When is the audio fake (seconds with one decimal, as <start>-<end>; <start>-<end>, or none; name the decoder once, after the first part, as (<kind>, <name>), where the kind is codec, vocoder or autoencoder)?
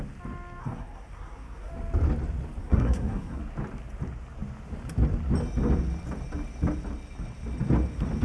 0.6-1.7 (codec, SNAC); 2.6-3.4